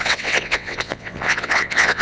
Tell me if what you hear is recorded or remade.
remade